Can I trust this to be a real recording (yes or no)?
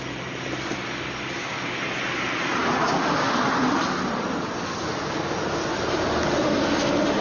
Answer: yes